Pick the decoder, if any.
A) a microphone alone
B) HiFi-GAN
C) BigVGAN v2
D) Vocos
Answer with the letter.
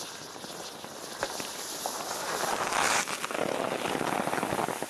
A